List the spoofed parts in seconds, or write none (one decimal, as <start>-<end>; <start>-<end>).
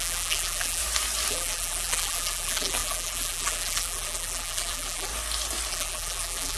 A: 0.0-0.8; 1.3-5.1; 5.7-6.6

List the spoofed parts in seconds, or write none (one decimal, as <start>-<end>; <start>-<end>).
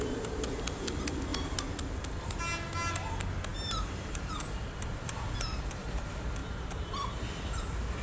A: 3.5-6.0; 6.4-6.9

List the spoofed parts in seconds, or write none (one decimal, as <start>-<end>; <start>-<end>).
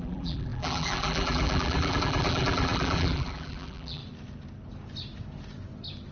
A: 0.0-4.0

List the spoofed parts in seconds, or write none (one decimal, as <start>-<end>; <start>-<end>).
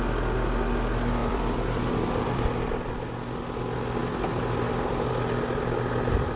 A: 1.2-2.7; 4.0-5.1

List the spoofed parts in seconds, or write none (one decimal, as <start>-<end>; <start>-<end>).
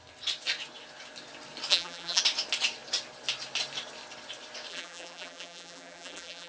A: 1.7-2.2; 4.7-6.5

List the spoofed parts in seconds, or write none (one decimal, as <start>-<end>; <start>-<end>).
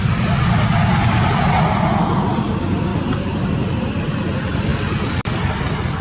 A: 0.0-2.9; 3.6-6.0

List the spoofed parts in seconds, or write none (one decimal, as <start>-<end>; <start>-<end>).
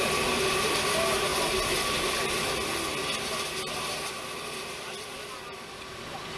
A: 0.0-1.3; 5.1-6.4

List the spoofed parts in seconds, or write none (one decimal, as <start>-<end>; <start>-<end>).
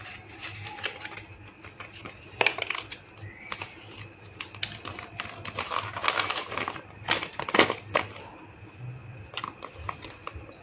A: 2.0-2.6